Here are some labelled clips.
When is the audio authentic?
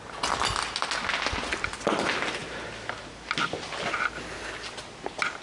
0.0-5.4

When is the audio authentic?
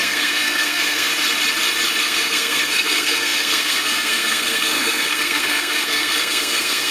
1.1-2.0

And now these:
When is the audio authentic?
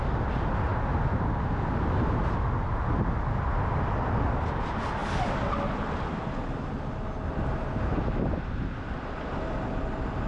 0.0-10.3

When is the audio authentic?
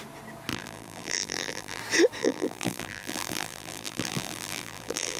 0.0-0.5; 1.8-2.2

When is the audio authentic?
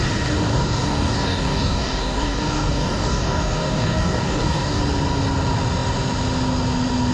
0.0-0.5; 4.8-7.1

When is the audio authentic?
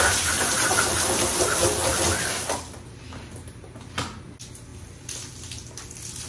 0.0-6.3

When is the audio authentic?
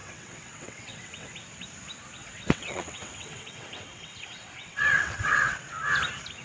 1.3-2.2; 5.6-6.4